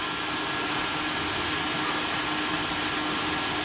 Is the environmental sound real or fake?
real